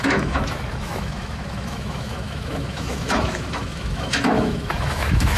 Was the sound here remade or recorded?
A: remade